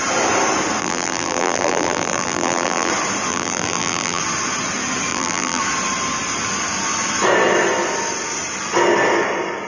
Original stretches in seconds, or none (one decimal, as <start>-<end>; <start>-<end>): 0.0-0.8; 2.9-3.3; 4.2-5.1; 5.6-9.7